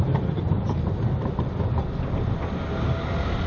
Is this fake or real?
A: real